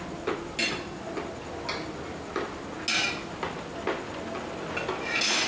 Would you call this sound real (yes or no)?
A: yes